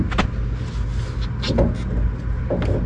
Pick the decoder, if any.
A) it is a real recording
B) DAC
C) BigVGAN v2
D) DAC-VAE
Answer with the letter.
A